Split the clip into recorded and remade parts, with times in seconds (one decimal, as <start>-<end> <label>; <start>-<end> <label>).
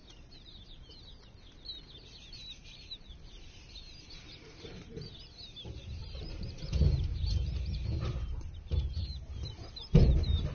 0.0-0.9 remade; 0.9-2.6 recorded; 2.6-5.2 remade; 5.2-6.0 recorded; 6.0-9.4 remade; 9.4-10.5 recorded